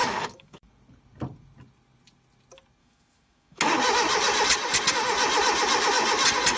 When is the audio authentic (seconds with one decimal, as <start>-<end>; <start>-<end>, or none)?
0.7-2.8; 3.7-6.6